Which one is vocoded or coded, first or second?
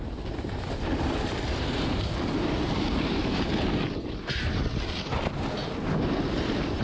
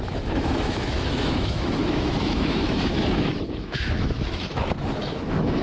second